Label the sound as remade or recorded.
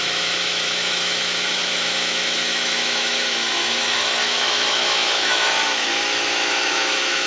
remade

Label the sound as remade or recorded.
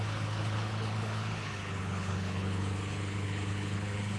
remade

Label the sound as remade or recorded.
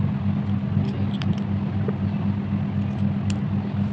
recorded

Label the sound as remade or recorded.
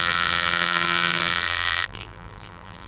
remade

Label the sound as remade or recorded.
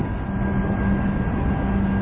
recorded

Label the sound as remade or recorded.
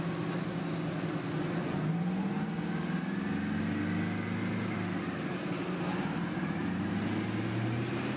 recorded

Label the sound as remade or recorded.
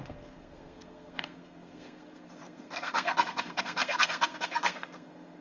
remade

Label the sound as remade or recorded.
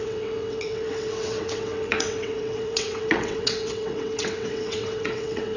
remade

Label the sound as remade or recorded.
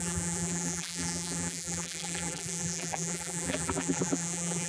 remade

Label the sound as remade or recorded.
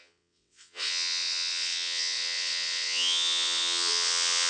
remade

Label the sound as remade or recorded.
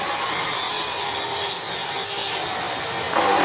recorded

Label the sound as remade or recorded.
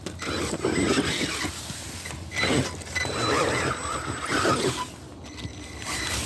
recorded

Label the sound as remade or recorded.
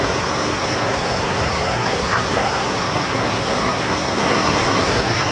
remade